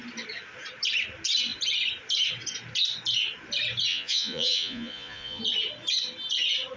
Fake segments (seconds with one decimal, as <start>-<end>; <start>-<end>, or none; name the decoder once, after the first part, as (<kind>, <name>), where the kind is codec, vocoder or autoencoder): 3.9-5.4 (vocoder, Vocos)